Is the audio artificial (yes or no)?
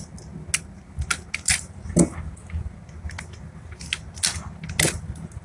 no